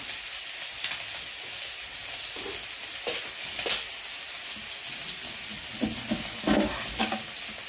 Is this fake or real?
real